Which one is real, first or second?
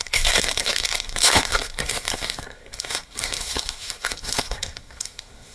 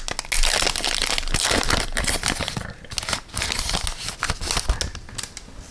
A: second